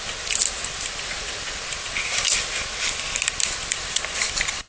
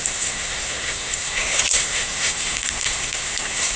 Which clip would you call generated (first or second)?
second